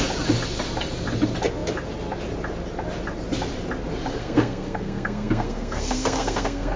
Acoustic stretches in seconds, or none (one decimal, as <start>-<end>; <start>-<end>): 0.0-4.2